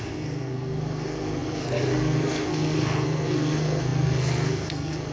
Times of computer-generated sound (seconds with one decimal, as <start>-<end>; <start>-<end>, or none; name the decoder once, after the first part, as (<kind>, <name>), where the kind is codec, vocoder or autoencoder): 0.0-5.1 (codec, SNAC)